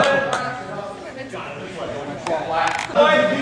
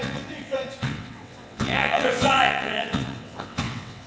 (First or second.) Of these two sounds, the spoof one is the second